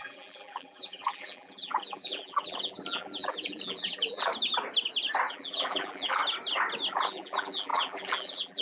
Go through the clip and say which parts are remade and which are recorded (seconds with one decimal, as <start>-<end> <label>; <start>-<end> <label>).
0.0-4.3 remade; 4.3-5.3 recorded; 5.3-6.2 remade; 6.2-6.9 recorded; 6.9-8.6 remade